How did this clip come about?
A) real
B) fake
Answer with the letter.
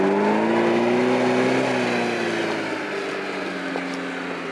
A